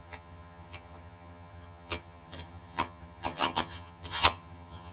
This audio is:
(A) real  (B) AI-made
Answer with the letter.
B